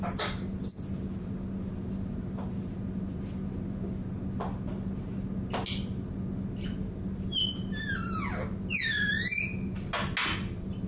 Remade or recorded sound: recorded